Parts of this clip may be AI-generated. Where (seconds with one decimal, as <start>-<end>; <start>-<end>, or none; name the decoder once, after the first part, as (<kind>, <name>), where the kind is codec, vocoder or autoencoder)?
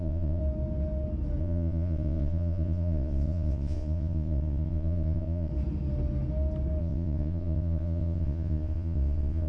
0.0-0.4 (vocoder, Vocos); 1.4-5.5; 6.8-9.5